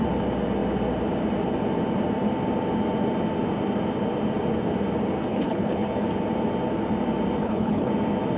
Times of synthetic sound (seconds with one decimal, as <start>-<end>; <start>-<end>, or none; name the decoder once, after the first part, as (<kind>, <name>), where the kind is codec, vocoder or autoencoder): 5.3-5.9 (codec, HILCodec); 7.4-7.9